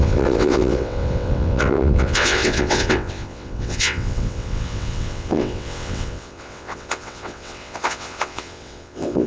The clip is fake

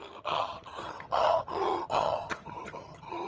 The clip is fake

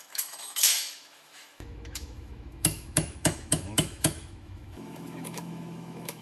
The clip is fake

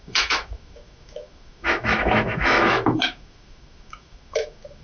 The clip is fake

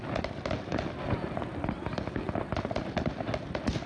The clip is real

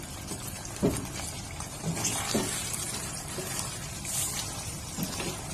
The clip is real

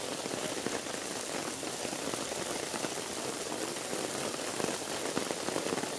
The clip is real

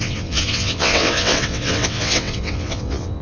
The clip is fake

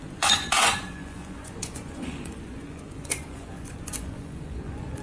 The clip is fake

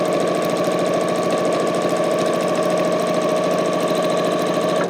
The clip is real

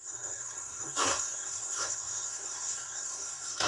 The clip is fake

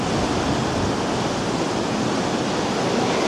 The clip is real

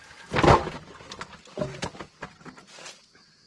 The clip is real